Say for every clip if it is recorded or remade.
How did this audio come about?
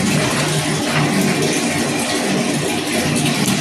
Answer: recorded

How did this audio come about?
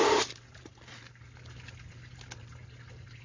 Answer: recorded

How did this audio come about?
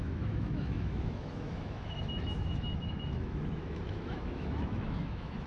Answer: remade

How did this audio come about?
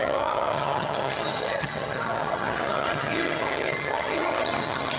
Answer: remade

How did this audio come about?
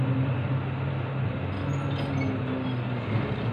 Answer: recorded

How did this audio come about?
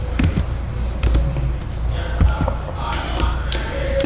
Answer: recorded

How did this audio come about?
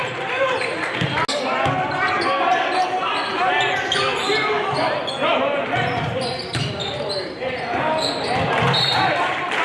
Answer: recorded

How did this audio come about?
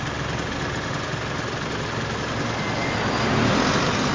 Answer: recorded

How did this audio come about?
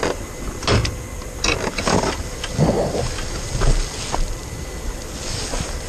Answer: recorded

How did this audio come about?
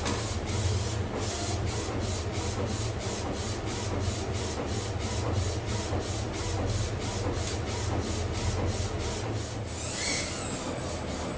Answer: recorded